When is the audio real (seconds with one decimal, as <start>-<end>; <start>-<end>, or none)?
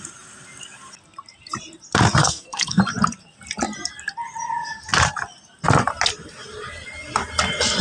0.0-2.2; 2.8-7.8